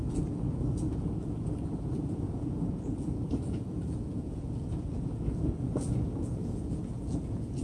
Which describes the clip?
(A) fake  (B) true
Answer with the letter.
A